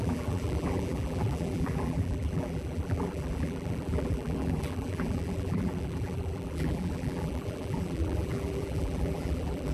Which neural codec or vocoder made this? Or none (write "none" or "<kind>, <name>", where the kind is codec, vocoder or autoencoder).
vocoder, BigVGAN v2